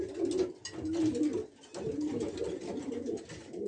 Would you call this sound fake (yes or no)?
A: no